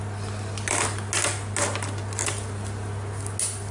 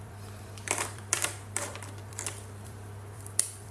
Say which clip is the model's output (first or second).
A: second